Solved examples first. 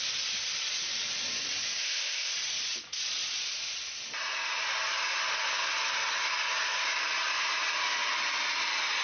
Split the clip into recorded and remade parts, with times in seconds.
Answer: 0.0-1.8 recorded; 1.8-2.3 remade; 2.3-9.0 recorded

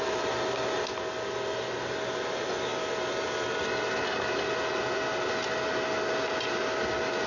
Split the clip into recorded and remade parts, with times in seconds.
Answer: 0.0-7.3 recorded

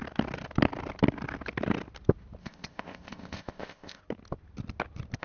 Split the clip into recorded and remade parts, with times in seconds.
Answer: 0.0-2.4 recorded; 2.4-4.0 remade; 4.0-5.2 recorded

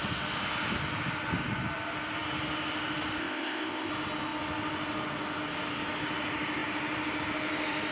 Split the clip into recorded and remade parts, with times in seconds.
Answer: 0.0-3.2 recorded; 3.2-3.9 remade; 3.9-7.9 recorded

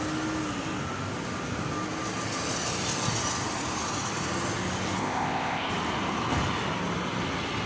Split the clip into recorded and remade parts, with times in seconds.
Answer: 0.0-5.0 recorded; 5.0-5.7 remade; 5.7-7.7 recorded

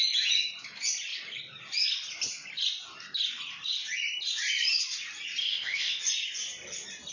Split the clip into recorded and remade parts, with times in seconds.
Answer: 0.0-5.4 recorded; 5.4-6.0 remade; 6.0-7.1 recorded

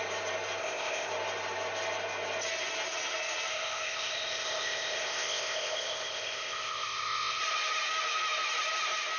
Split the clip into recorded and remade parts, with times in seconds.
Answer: 0.0-0.6 recorded; 0.6-1.1 remade; 1.1-3.5 recorded; 3.5-7.4 remade; 7.4-9.2 recorded

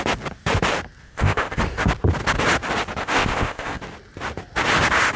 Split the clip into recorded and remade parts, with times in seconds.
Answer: 0.0-1.0 recorded; 1.0-1.6 remade; 1.6-3.0 recorded; 3.0-3.8 remade; 3.8-5.2 recorded